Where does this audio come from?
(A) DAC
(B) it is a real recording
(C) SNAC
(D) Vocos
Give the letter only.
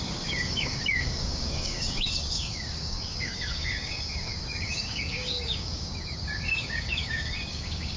A